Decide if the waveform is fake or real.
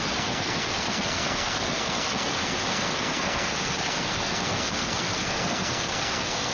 fake